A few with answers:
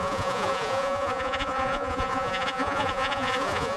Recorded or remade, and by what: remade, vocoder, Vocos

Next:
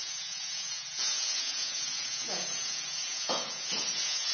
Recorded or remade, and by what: remade, vocoder, Vocos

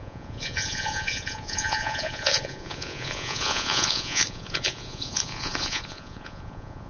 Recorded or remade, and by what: remade, vocoder, Vocos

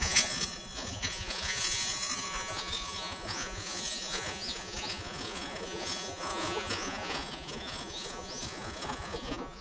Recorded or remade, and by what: remade, vocoder, Vocos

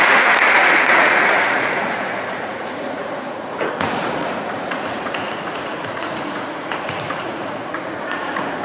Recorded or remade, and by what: remade, vocoder, Vocos